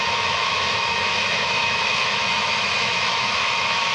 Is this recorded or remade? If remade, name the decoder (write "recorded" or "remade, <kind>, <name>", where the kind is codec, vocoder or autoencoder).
remade, autoencoder, DAC-VAE